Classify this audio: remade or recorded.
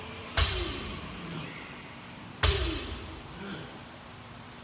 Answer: remade